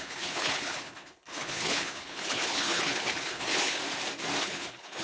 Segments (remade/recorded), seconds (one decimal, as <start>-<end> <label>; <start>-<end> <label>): 0.0-3.8 remade; 3.8-4.4 recorded; 4.4-5.0 remade